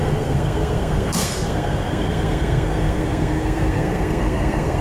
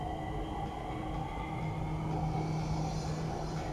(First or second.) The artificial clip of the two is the first